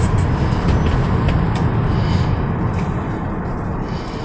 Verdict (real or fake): real